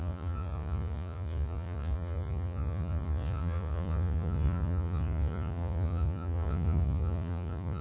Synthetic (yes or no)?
yes